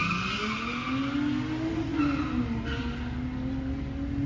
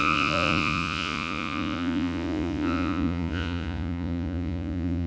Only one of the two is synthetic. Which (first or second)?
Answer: second